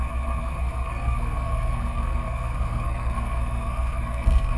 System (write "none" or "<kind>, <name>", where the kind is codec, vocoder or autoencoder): codec, SNAC